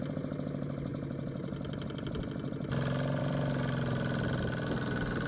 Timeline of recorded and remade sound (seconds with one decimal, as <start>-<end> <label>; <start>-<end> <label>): 0.0-5.3 recorded